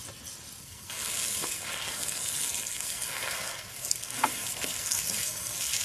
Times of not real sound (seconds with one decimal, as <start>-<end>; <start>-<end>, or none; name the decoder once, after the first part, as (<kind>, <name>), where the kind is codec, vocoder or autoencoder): 0.6-5.8 (codec, SNAC)